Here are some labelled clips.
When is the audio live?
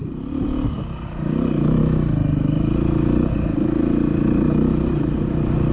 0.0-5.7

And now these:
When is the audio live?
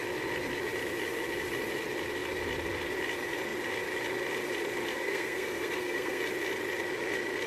0.0-4.9; 6.2-7.5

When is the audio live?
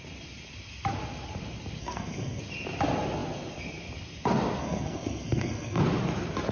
0.0-1.8; 2.4-4.6; 5.8-6.5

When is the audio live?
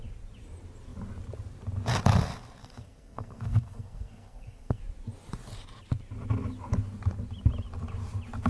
0.0-2.6; 4.8-8.5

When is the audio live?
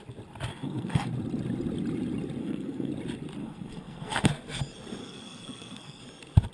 0.0-0.5; 1.1-2.4; 2.9-3.4; 4.3-5.0; 6.0-6.5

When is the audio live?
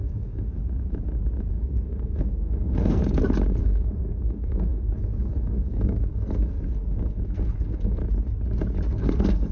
0.6-1.5; 3.0-3.6; 8.0-8.9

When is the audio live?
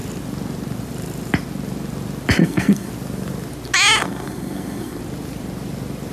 0.0-2.4; 2.9-4.0; 5.0-6.1